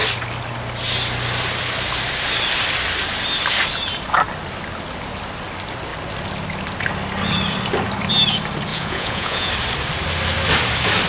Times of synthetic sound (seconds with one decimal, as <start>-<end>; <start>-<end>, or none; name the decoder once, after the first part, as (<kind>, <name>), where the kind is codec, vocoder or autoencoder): 8.7-9.5 (vocoder, Vocos)